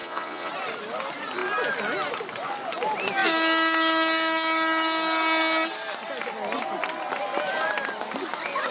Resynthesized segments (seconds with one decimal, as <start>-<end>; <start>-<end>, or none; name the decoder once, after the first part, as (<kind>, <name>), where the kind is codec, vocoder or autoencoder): 0.0-0.5 (vocoder, Vocos)